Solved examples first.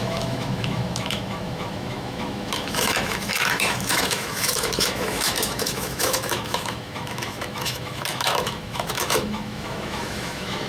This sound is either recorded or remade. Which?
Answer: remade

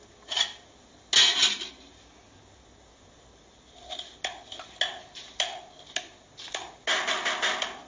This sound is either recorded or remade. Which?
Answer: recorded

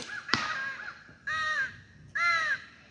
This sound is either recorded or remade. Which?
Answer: remade